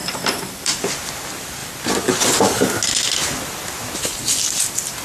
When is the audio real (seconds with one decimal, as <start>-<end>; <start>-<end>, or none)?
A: 0.9-5.0